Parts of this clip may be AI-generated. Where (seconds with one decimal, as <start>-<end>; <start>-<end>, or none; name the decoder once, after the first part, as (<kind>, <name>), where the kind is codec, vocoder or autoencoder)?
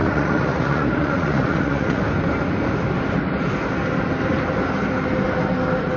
0.0-2.0 (vocoder, Vocos)